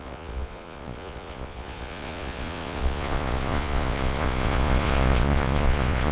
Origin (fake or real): fake